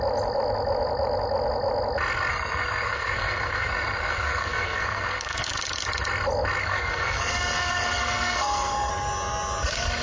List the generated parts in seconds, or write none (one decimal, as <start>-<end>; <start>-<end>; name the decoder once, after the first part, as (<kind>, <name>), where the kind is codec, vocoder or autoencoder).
2.3-5.5 (codec, SNAC); 6.6-8.9